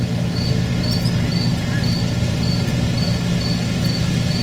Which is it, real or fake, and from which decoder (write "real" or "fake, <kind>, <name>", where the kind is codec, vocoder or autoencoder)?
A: real